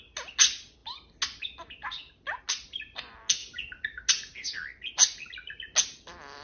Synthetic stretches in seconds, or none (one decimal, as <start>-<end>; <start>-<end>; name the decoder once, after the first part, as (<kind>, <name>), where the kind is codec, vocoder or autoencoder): none